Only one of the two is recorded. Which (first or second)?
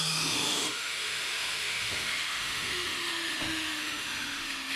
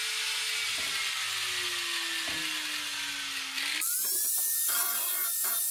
second